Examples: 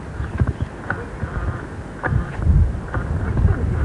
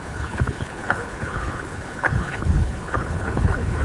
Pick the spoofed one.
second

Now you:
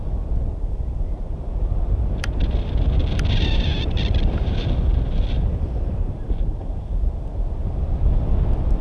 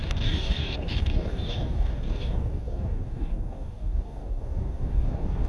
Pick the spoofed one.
second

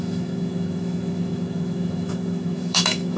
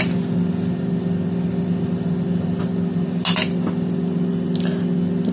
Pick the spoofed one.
first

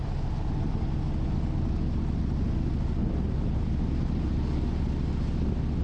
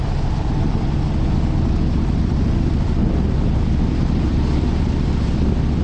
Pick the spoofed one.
second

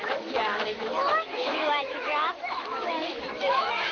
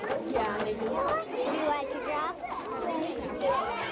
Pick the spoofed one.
first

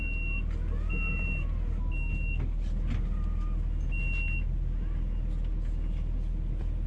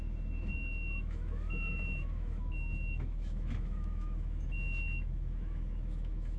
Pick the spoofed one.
second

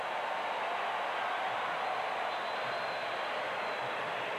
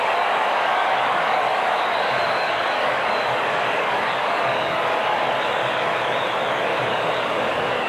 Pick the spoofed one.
second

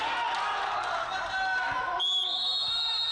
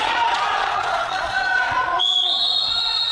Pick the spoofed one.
second